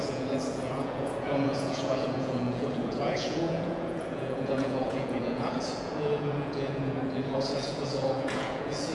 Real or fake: fake